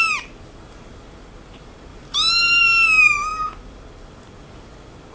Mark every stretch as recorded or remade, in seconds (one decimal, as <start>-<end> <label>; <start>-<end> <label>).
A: 0.0-5.1 recorded